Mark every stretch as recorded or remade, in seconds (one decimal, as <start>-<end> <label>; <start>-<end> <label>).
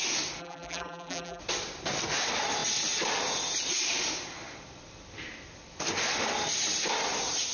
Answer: 0.0-0.4 recorded; 0.4-1.4 remade; 1.4-7.5 recorded